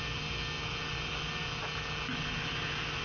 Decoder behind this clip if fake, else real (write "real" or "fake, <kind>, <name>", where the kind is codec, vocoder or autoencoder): real